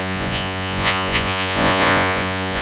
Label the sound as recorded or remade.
remade